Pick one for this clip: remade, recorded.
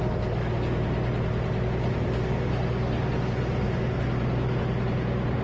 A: recorded